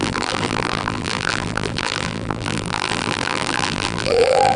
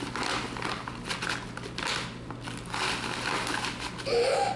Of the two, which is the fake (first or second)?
first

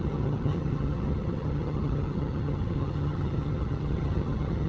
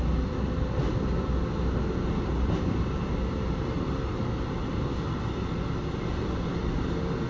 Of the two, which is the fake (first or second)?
first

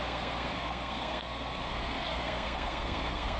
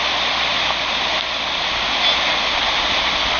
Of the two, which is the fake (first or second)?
first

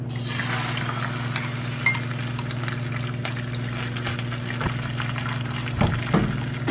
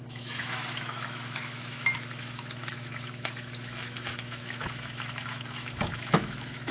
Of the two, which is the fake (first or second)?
second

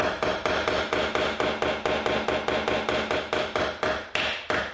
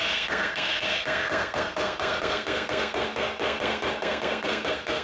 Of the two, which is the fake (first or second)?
second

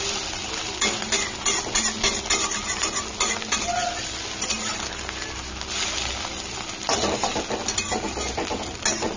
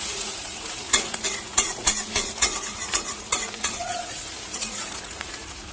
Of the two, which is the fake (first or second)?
second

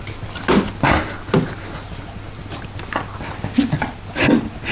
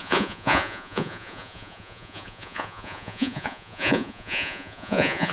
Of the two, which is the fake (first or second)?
second